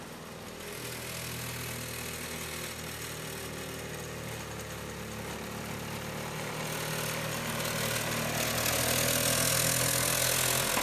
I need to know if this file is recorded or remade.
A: recorded